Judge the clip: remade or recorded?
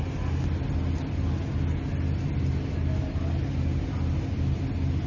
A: recorded